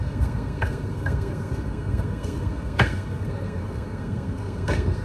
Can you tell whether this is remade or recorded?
remade